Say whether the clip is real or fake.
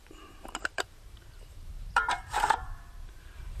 fake